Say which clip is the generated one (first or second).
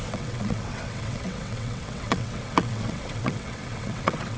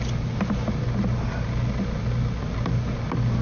first